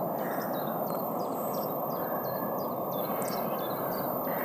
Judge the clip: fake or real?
real